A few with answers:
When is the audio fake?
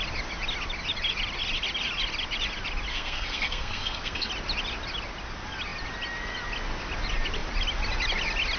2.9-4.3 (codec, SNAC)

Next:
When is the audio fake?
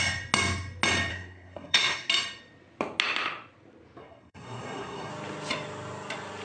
1.1-2.1 (codec, SNAC); 4.0-5.1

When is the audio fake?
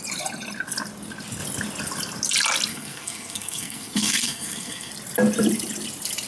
2.7-4.9 (codec, SNAC)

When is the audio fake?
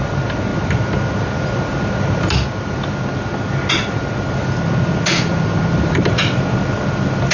none